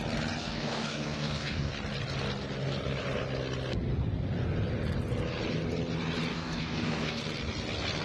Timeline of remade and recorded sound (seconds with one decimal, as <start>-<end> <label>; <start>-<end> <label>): 0.0-0.4 recorded; 0.4-1.7 remade; 1.7-6.3 recorded; 6.3-7.2 remade; 7.2-8.0 recorded